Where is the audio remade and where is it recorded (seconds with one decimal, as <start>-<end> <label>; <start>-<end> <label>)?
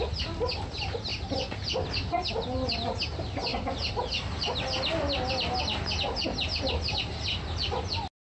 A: 0.0-8.3 recorded